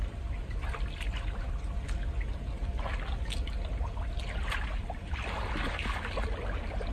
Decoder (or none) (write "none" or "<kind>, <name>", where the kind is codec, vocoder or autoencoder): none